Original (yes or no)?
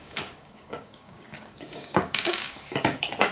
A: no